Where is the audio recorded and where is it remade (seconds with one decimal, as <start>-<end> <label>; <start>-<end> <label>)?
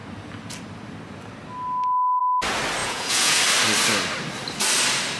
0.0-2.8 recorded; 2.8-3.4 remade; 3.4-5.2 recorded